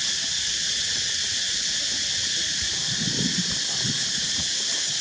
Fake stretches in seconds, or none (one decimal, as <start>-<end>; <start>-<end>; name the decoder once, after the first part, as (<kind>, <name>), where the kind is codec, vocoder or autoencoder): 0.5-1.1 (vocoder, WaveNeXt)